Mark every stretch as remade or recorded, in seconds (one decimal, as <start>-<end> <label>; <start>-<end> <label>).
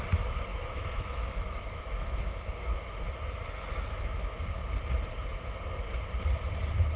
0.0-0.5 recorded; 0.5-3.1 remade; 3.1-7.0 recorded